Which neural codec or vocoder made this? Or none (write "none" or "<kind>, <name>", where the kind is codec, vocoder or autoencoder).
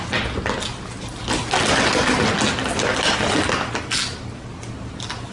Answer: none